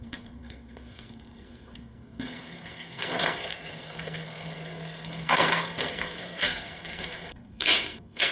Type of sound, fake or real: fake